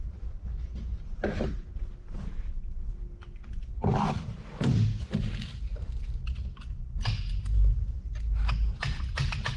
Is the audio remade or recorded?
recorded